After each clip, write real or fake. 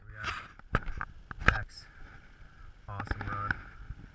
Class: real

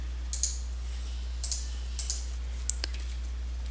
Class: real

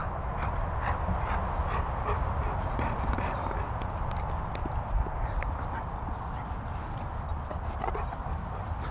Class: real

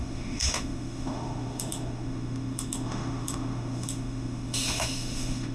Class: fake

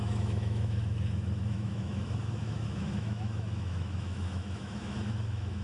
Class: fake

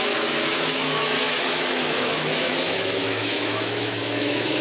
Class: fake